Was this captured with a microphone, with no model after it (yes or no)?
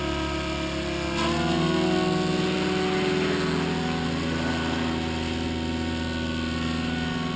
yes